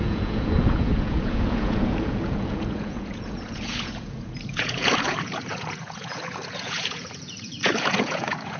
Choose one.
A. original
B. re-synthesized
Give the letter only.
B